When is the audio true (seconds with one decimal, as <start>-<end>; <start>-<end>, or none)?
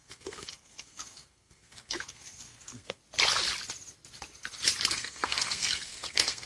3.0-4.9